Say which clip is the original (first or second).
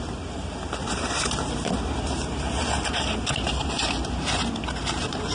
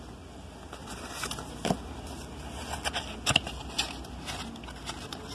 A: second